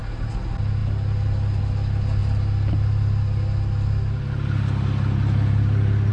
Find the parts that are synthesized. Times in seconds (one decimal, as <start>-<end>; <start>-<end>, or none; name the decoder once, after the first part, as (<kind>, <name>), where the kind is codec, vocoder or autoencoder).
none

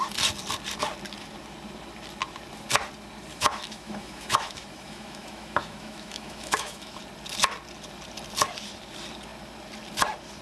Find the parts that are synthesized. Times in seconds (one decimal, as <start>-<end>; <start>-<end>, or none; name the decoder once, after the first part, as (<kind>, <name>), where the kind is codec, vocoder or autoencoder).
3.3-7.0 (autoencoder, DAC-VAE)